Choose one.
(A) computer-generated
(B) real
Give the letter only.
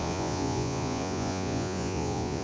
A